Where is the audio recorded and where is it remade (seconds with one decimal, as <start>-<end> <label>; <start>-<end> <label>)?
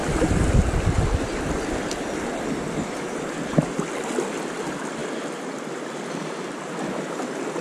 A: 0.0-7.6 recorded